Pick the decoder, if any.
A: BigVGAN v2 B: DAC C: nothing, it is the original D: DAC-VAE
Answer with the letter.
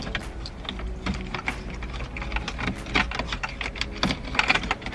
C